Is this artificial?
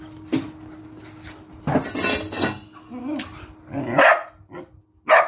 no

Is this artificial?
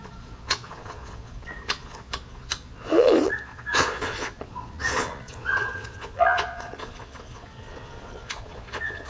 yes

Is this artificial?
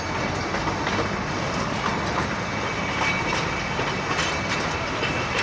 no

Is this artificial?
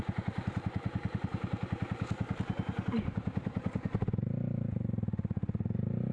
yes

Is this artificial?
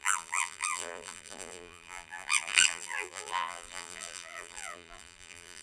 yes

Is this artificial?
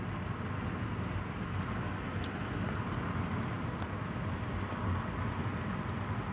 no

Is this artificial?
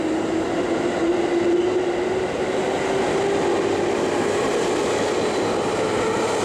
no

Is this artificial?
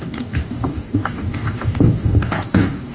yes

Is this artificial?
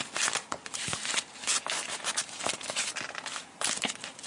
no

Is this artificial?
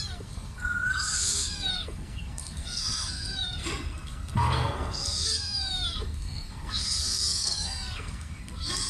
yes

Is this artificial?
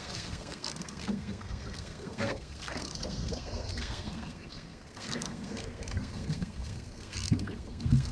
yes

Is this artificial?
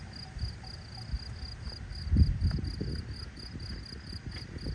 no